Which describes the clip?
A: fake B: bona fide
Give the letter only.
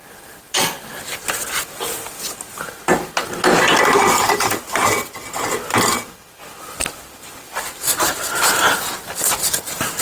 B